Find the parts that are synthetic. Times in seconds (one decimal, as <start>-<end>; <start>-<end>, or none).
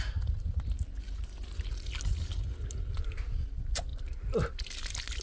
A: none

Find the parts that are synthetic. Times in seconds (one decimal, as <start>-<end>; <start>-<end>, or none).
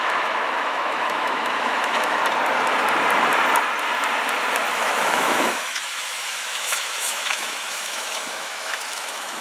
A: 0.0-2.2; 4.7-9.4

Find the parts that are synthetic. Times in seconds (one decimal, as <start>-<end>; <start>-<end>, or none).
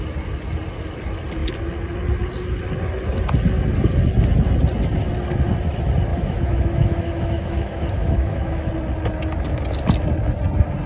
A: 6.1-8.7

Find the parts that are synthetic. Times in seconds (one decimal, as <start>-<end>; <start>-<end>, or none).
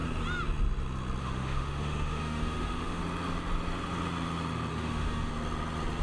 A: 1.2-3.0; 4.7-5.3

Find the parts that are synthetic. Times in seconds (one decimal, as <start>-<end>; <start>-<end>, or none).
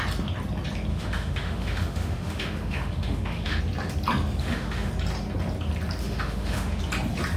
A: 0.9-3.6; 4.4-4.9; 6.0-6.8